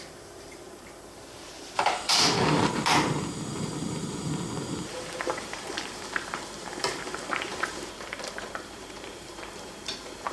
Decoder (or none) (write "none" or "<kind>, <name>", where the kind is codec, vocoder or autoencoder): vocoder, BigVGAN v2